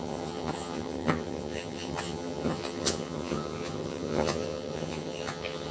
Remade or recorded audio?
remade